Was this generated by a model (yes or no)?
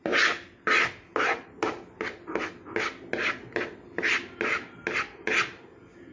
no